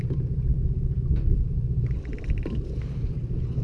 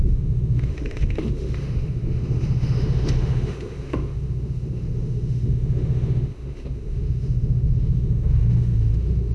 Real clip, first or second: first